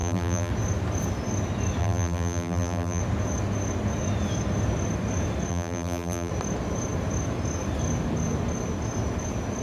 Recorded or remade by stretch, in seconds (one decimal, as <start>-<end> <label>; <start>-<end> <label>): 0.0-0.5 remade; 0.5-1.8 recorded; 1.8-3.0 remade; 3.0-5.5 recorded; 5.5-6.3 remade; 6.3-9.6 recorded